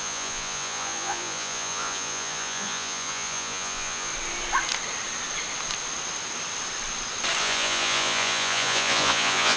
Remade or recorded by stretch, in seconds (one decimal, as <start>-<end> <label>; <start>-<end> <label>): 0.0-4.1 remade; 4.1-7.4 recorded; 7.4-9.6 remade

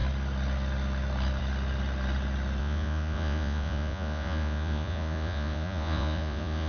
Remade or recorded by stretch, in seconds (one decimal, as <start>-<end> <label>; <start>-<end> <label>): 0.0-2.6 recorded; 2.6-6.7 remade

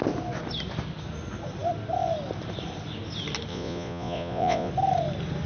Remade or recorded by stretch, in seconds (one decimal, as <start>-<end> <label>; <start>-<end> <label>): 0.0-3.5 recorded; 3.5-4.7 remade; 4.7-5.5 recorded

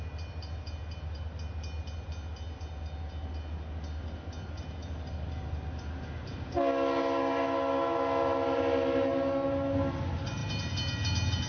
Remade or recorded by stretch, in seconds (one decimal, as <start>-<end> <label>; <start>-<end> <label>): 0.0-11.5 recorded

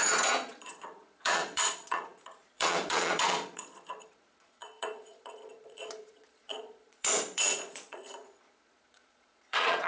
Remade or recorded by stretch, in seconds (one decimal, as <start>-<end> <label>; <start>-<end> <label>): 0.0-9.9 remade

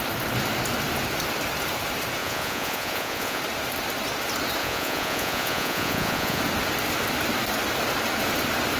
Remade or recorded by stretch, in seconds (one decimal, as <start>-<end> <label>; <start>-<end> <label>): 0.0-2.2 recorded; 2.2-3.4 remade; 3.4-4.6 recorded; 4.6-6.4 remade; 6.4-8.8 recorded

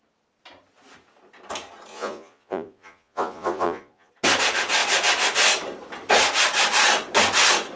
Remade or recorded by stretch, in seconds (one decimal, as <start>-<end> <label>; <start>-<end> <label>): 0.0-1.9 recorded; 1.9-4.1 remade; 4.1-7.8 recorded

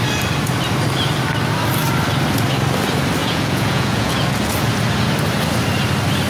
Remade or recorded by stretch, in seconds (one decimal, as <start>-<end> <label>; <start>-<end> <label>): 0.0-3.2 recorded; 3.2-4.1 remade; 4.1-6.3 recorded